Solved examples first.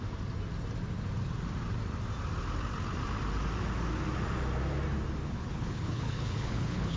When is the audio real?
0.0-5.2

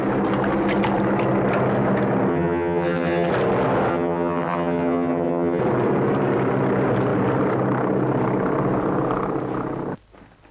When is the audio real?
0.0-2.3; 3.3-3.9; 5.6-10.5

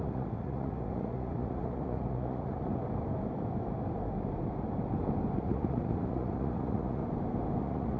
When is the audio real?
2.7-5.4; 7.0-7.6

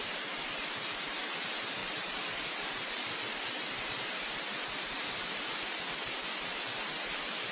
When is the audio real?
0.0-1.8; 5.8-7.5

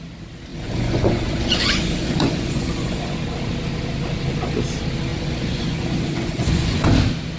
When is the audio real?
0.0-0.5; 3.2-5.1; 6.9-7.4

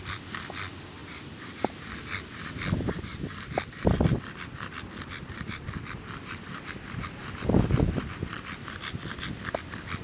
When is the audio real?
0.0-10.0